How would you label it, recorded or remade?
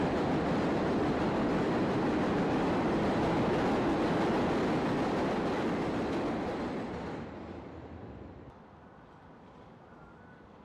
remade